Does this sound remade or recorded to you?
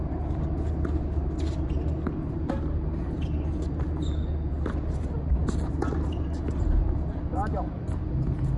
recorded